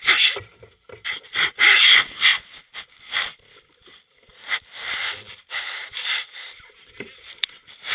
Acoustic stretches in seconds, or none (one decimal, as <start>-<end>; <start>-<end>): 0.0-6.2